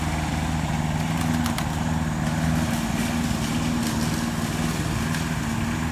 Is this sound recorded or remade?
recorded